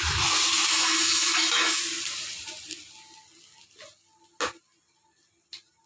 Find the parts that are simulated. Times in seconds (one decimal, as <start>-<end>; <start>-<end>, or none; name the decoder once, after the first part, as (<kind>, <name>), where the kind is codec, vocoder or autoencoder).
0.7-1.8 (autoencoder, DAC-VAE)